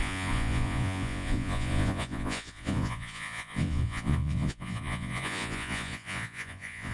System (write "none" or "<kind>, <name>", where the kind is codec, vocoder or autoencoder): vocoder, Vocos